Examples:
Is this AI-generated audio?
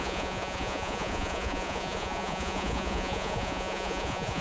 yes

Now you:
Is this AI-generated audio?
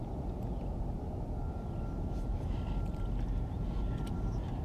no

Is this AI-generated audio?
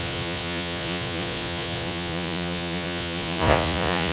yes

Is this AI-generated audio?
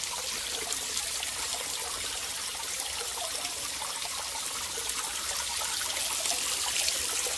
no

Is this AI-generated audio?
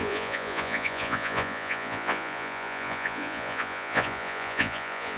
yes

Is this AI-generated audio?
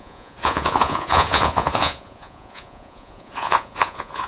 yes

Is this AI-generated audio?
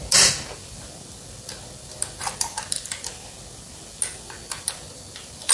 no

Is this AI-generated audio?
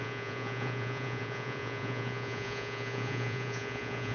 yes